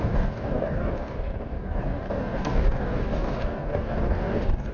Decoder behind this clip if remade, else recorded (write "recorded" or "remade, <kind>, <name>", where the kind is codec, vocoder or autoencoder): remade, codec, DAC